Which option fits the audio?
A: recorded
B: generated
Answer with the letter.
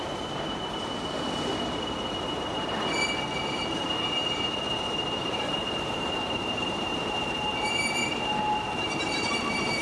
B